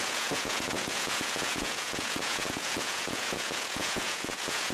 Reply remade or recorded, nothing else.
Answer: remade